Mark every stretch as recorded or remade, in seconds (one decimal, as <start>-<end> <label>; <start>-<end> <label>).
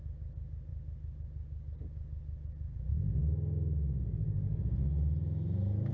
0.0-5.9 recorded